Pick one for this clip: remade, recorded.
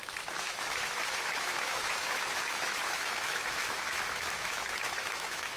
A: remade